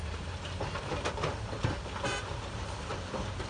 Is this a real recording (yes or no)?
no